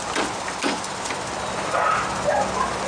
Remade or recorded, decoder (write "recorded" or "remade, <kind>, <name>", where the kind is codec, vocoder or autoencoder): recorded